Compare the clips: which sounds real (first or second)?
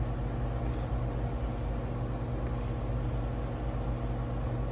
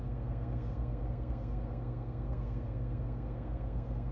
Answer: first